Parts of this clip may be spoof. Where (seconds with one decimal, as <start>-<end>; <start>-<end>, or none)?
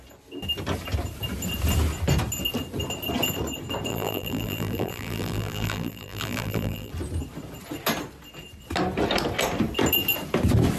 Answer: 3.9-6.9